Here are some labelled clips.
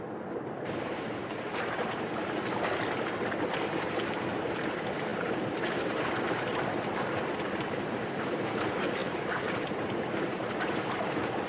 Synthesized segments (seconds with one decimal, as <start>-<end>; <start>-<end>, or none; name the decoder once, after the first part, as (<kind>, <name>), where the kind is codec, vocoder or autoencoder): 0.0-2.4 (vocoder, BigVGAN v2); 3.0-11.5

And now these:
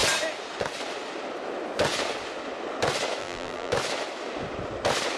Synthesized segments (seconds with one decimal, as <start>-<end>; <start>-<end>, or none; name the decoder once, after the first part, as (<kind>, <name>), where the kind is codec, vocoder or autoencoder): 3.2-3.7 (vocoder, BigVGAN v2)

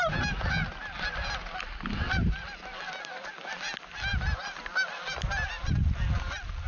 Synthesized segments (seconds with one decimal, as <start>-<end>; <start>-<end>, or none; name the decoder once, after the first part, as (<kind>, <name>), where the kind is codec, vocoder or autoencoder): none